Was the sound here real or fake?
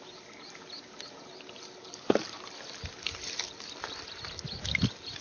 real